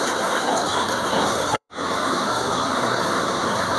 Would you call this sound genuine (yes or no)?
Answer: no